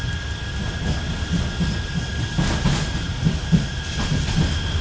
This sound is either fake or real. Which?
real